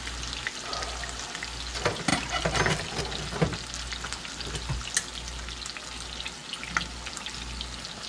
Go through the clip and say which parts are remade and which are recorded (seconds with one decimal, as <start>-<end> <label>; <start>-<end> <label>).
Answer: 0.0-8.1 recorded